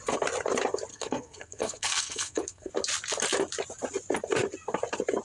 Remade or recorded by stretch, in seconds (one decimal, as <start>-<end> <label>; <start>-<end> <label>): 0.0-0.9 recorded; 0.9-2.7 remade; 2.7-5.2 recorded